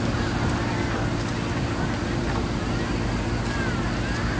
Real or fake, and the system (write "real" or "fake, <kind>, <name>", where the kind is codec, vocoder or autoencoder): real